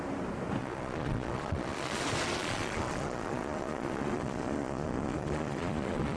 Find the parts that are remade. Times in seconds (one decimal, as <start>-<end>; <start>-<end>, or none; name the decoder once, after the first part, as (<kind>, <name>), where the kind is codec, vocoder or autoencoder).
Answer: 0.6-2.0 (vocoder, Vocos); 2.4-6.2